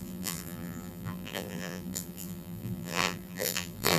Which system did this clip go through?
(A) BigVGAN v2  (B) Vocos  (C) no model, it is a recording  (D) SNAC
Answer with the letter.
A